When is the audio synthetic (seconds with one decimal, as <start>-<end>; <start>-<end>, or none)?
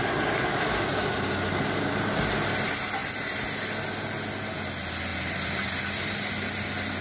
3.0-3.5; 5.1-6.2